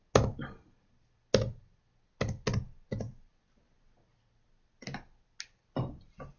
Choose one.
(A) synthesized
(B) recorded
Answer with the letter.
B